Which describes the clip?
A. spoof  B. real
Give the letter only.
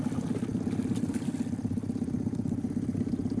B